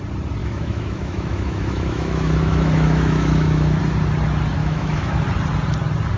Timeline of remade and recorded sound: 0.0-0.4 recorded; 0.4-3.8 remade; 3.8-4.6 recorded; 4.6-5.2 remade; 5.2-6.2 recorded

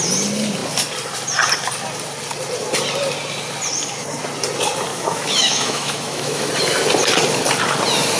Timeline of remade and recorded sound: 0.0-4.9 recorded; 4.9-6.5 remade; 6.5-8.2 recorded

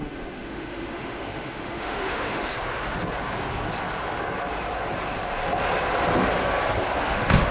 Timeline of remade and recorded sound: 0.0-2.5 remade; 2.5-7.0 recorded; 7.0-7.5 remade

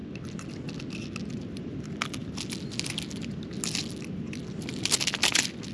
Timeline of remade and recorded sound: 0.0-5.7 recorded

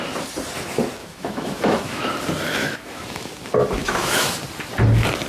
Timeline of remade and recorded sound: 0.0-1.0 recorded; 1.0-2.0 remade; 2.0-2.6 recorded; 2.6-3.3 remade; 3.3-3.8 recorded; 3.8-4.4 remade; 4.4-5.3 recorded

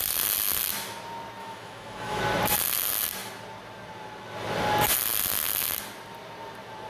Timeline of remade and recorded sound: 0.0-1.4 recorded; 1.4-2.2 remade; 2.2-6.9 recorded

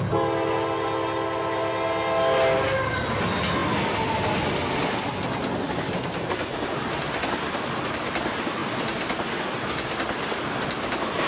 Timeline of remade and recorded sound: 0.0-11.3 recorded

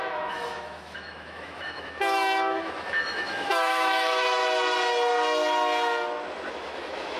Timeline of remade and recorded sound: 0.0-4.4 remade; 4.4-6.5 recorded; 6.5-7.2 remade